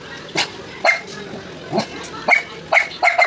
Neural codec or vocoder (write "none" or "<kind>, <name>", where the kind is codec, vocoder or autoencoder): none